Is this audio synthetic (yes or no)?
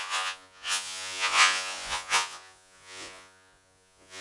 yes